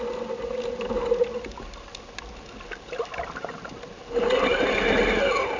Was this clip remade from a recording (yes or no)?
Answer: no